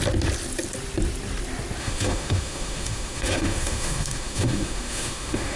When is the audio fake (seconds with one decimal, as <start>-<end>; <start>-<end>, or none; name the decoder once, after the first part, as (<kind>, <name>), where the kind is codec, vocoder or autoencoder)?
1.8-5.6 (autoencoder, DAC-VAE)